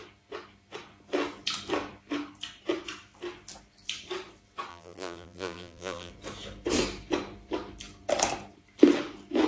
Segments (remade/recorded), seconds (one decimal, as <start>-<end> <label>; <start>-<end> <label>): 0.0-4.7 recorded; 4.7-6.1 remade; 6.1-9.5 recorded